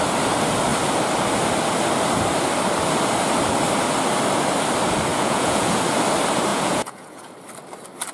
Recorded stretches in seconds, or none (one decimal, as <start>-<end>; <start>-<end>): 0.0-5.1; 5.8-6.5; 7.3-8.1